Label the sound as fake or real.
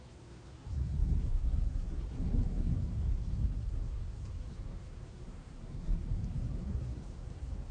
fake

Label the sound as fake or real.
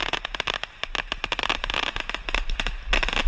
real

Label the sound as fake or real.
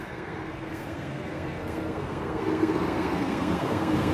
fake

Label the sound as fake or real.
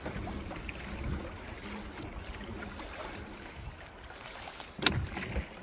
real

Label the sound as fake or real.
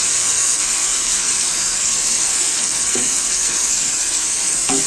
fake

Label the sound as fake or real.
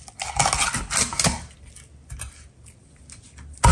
real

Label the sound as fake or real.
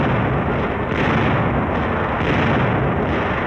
real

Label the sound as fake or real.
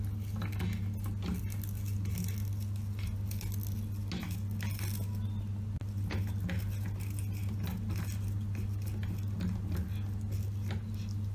real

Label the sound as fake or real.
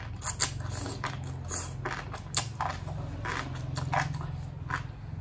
real